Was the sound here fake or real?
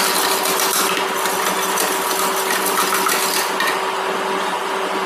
real